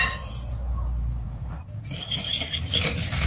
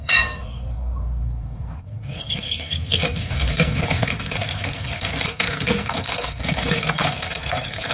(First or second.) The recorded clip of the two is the first